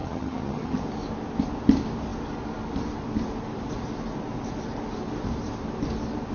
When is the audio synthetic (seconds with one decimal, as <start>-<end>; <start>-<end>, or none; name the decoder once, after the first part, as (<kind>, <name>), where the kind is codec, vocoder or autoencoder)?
0.0-0.8 (vocoder, HiFi-GAN)